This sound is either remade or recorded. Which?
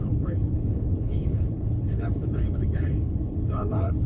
remade